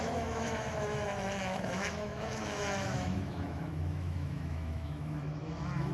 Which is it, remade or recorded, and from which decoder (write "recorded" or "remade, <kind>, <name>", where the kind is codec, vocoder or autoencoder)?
remade, autoencoder, DAC-VAE